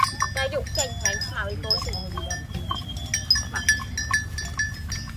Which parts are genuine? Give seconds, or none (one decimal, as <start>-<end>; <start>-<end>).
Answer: 0.0-5.2